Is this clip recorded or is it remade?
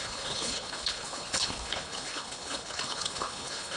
remade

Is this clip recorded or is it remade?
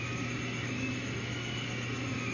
recorded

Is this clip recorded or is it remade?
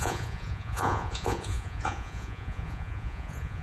remade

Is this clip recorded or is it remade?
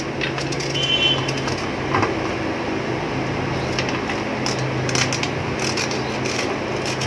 recorded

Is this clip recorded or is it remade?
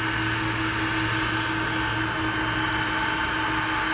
recorded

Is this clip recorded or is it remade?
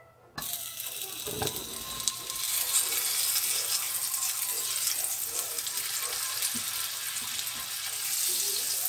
recorded